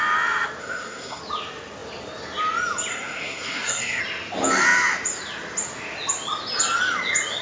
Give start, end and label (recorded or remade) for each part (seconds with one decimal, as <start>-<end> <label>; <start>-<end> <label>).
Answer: 0.0-0.6 recorded; 0.6-1.2 remade; 1.2-2.9 recorded; 2.9-4.0 remade; 4.0-7.4 recorded